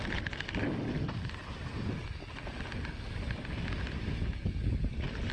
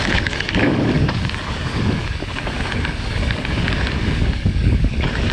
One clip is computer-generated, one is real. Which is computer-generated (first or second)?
second